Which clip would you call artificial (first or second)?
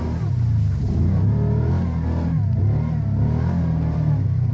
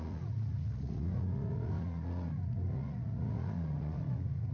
second